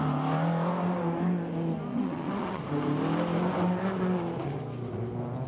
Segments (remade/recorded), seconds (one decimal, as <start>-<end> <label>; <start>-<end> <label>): 0.0-1.9 recorded; 1.9-2.6 remade; 2.6-5.5 recorded